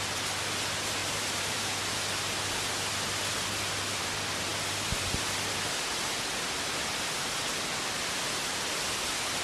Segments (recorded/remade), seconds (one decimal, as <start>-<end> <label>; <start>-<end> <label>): 0.0-1.0 recorded; 1.0-1.7 remade; 1.7-9.4 recorded